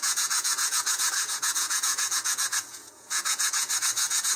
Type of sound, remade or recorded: remade